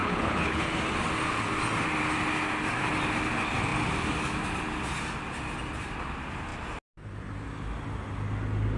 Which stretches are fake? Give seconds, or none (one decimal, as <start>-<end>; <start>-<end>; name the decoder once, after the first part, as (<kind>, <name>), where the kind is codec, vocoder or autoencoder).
0.0-0.7 (codec, HILCodec)

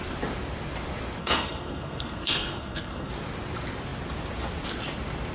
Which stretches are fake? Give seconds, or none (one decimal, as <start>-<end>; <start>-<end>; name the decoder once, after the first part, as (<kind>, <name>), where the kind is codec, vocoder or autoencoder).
1.2-3.1 (codec, SNAC)

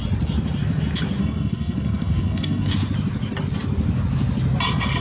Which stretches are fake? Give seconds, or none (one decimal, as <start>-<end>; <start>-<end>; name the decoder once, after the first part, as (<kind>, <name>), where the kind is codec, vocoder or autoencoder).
1.2-2.7 (codec, SNAC)

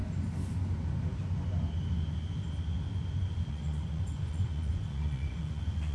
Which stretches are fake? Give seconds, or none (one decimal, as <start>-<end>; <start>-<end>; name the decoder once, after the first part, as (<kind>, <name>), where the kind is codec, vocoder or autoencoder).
3.5-5.9 (vocoder, Vocos)

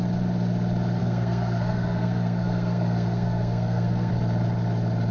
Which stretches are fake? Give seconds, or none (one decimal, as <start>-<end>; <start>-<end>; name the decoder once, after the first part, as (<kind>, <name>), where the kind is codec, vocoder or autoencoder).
1.0-4.1 (codec, SNAC)

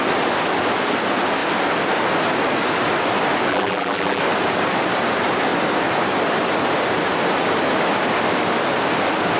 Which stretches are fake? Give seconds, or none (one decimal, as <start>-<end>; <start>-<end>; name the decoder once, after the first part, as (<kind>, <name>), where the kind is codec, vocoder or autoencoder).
3.5-4.2 (vocoder, BigVGAN v2)

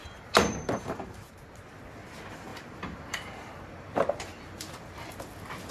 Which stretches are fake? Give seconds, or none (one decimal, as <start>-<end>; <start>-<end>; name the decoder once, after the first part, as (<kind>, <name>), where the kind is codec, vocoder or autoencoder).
0.0-1.2 (vocoder, BigVGAN v2); 2.5-4.7